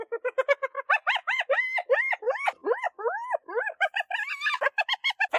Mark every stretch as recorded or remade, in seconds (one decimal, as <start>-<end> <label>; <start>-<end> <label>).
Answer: 0.0-5.4 recorded